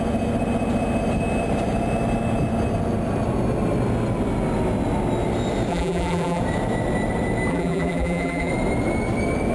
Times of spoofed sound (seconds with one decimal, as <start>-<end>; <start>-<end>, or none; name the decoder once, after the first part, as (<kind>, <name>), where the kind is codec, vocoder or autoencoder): 5.7-6.4 (vocoder, BigVGAN v2); 7.5-8.5